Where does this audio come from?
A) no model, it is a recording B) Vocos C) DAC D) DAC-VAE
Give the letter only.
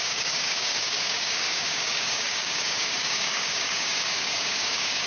C